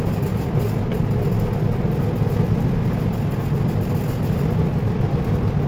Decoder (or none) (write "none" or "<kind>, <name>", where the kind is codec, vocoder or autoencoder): none